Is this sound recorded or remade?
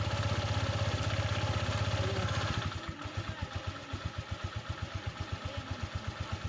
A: recorded